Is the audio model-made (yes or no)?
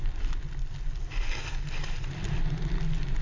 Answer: no